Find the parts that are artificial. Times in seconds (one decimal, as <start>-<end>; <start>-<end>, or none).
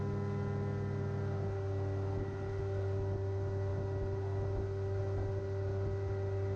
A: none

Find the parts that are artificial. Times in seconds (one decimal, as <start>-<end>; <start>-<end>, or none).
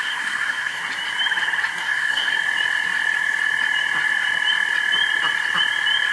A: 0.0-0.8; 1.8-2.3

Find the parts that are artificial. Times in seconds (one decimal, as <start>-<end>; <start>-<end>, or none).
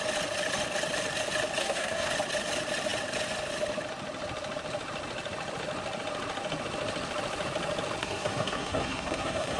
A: 1.6-2.1; 8.0-9.6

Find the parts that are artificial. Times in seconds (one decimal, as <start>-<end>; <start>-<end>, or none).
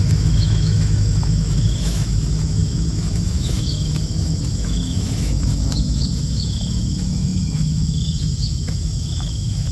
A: 0.0-9.7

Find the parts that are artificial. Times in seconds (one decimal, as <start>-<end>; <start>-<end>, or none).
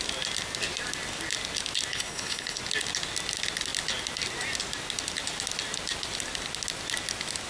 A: 1.9-2.6